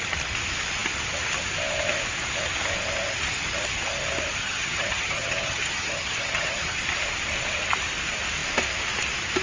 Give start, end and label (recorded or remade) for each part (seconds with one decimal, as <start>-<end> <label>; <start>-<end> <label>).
0.0-4.4 recorded; 4.4-6.8 remade; 6.8-9.4 recorded